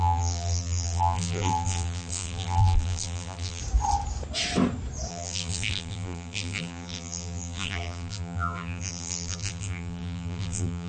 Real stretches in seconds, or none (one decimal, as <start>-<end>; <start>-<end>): 3.6-5.1

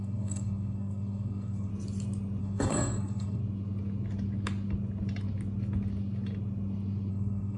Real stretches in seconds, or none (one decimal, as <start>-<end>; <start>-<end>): 1.7-2.4; 3.4-7.1

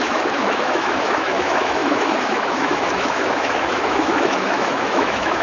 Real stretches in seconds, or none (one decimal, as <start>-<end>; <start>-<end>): none

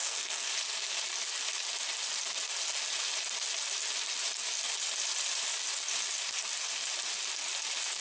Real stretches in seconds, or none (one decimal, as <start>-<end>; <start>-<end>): 0.5-8.0